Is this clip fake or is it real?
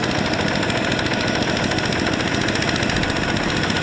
real